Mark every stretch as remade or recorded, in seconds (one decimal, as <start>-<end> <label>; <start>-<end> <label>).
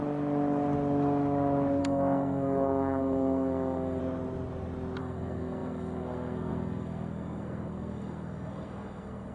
0.0-1.8 recorded; 1.8-4.0 remade; 4.0-5.0 recorded; 5.0-9.3 remade